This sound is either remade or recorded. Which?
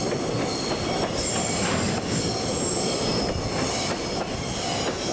recorded